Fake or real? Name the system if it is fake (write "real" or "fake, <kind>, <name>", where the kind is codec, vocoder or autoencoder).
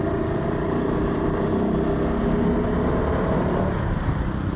real